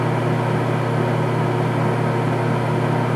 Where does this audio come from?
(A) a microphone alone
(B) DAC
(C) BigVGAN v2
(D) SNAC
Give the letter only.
A